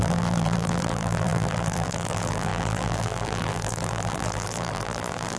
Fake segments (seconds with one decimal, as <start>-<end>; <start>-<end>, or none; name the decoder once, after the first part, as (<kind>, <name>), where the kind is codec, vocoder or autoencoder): 0.0-5.4 (vocoder, BigVGAN v2)